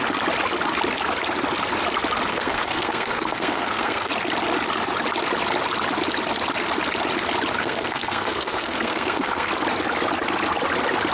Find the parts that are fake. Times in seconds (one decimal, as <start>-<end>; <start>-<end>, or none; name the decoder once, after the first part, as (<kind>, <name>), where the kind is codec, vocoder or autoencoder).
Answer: 2.3-4.1 (codec, SNAC); 7.6-9.5